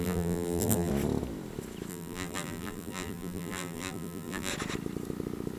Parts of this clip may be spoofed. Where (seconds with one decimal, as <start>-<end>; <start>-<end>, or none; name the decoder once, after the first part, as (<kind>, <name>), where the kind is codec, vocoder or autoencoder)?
0.0-0.9 (vocoder, BigVGAN v2); 1.9-4.5